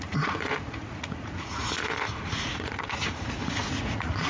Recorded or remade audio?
remade